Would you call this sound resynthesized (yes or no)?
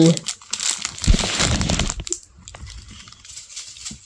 no